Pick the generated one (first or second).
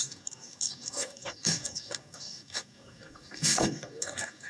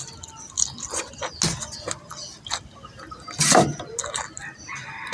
first